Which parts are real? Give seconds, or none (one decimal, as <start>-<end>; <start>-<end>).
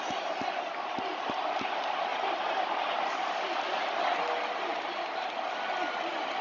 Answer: 0.0-6.4